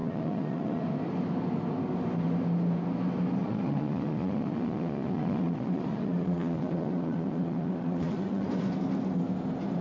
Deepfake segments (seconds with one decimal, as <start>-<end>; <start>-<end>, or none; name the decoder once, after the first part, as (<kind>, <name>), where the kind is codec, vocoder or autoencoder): 0.0-0.8 (vocoder, Vocos); 3.4-8.5

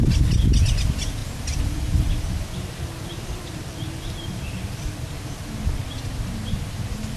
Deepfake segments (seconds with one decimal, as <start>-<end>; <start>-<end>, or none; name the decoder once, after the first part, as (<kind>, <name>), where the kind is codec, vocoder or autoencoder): 1.2-5.1 (vocoder, BigVGAN v2)

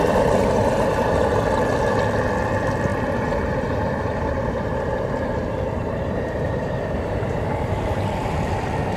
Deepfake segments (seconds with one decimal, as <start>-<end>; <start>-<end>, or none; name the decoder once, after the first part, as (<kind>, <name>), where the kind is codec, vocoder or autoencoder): 2.9-7.7 (vocoder, BigVGAN v2)